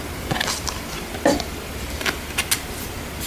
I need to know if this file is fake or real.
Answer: real